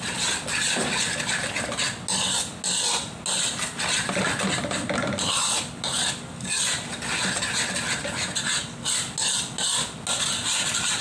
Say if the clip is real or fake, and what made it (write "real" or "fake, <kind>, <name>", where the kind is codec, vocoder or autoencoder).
real